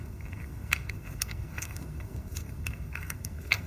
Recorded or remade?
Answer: remade